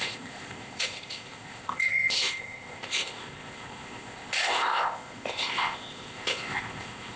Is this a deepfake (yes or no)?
yes